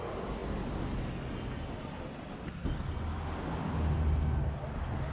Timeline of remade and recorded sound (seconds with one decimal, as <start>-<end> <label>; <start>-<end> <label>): 0.0-5.1 recorded